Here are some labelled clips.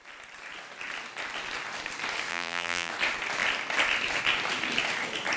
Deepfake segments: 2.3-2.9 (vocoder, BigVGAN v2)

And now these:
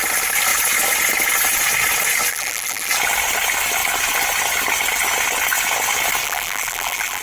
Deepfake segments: 2.3-2.9 (vocoder, BigVGAN v2); 6.2-7.2

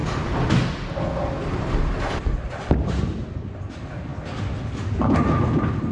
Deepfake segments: none

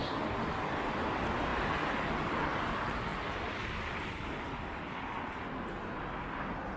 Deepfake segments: none

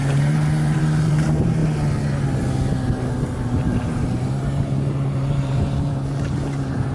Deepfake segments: 0.0-1.6 (vocoder, BigVGAN v2); 3.4-6.9

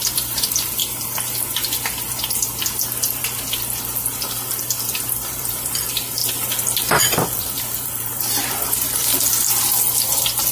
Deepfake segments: 0.0-0.8 (vocoder, BigVGAN v2); 5.0-6.2; 7.0-10.5

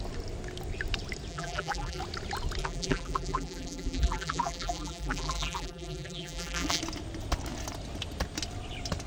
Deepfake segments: 1.3-2.0 (vocoder, BigVGAN v2); 2.6-6.8

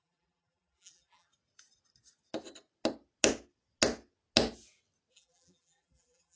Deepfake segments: 0.0-1.3 (vocoder, BigVGAN v2); 5.1-6.4